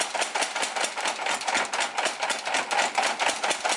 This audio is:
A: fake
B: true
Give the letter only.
B